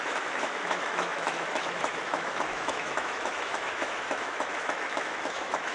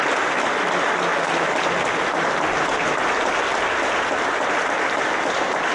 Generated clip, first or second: first